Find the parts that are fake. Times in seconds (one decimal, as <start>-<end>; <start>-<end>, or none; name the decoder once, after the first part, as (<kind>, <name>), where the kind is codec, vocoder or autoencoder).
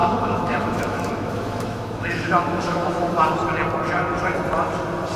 0.0-3.1 (autoencoder, DAC-VAE)